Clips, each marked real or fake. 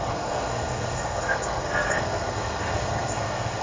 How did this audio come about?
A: fake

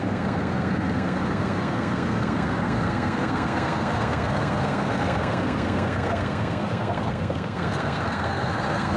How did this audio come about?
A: fake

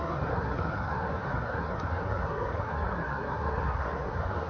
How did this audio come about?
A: fake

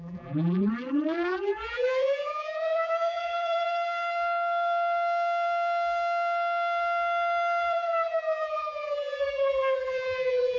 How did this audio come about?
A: fake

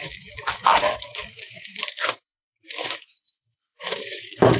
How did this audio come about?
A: fake